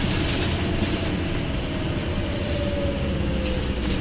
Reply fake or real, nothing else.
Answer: real